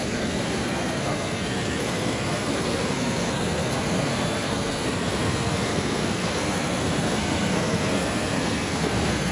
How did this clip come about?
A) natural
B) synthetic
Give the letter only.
B